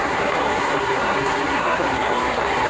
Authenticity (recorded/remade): remade